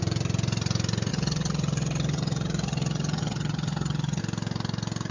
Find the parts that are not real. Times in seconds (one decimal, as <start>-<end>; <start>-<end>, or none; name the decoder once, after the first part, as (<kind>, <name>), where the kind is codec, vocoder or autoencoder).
1.1-4.2 (vocoder, HiFi-GAN)